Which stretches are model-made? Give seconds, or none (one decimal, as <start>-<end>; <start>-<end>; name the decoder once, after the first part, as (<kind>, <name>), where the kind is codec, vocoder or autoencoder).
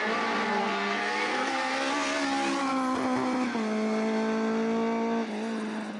0.5-1.7 (codec, SNAC)